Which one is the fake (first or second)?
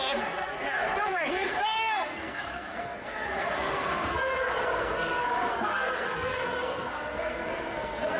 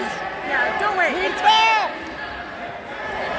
first